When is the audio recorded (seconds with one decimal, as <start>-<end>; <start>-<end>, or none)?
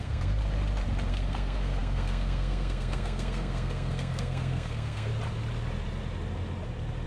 0.4-1.1; 5.1-7.1